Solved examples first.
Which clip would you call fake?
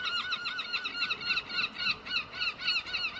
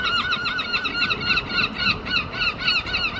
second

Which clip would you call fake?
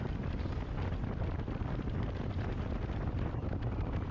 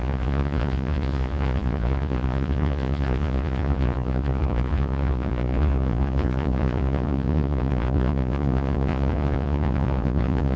second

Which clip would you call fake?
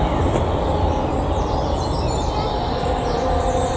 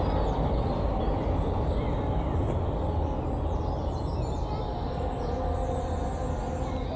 first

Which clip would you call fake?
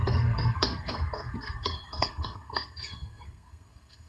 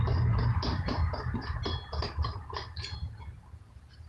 first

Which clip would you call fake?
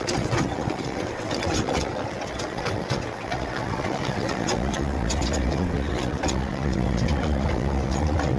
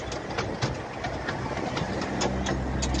first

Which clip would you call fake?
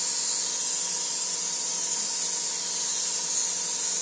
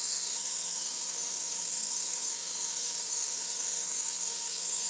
second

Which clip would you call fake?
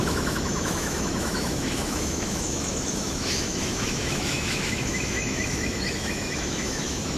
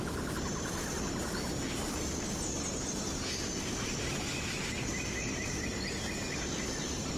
first